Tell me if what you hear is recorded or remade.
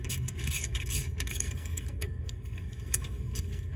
remade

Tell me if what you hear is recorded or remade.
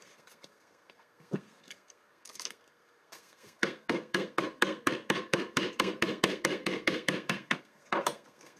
remade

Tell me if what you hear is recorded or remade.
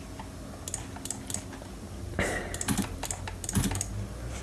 recorded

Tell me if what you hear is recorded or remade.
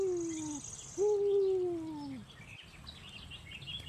recorded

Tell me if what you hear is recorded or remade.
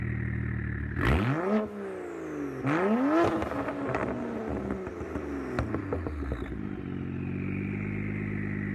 recorded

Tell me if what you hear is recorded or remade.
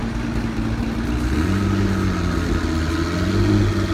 recorded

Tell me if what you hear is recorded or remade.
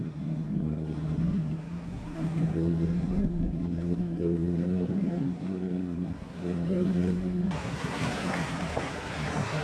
remade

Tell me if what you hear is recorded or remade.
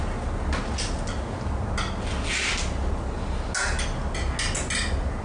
recorded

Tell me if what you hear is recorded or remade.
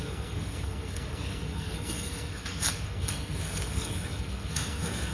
remade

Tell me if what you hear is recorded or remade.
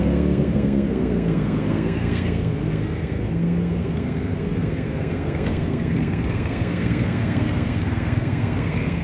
remade